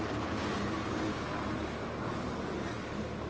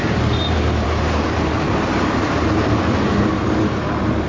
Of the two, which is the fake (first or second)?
second